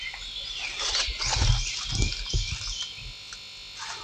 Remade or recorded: recorded